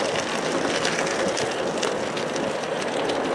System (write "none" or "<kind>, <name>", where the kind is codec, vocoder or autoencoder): none